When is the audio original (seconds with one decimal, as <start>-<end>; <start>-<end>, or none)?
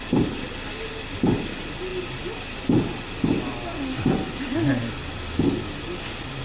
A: 0.0-6.4